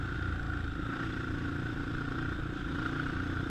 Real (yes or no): yes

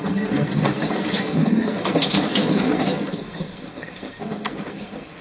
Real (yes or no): no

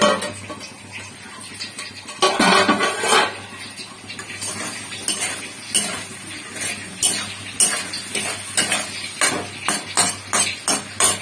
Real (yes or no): yes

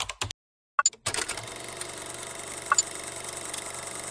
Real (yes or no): yes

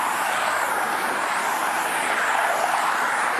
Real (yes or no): no